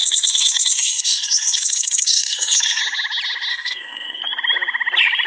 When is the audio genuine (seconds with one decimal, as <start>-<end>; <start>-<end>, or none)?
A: 2.8-3.5; 4.2-5.3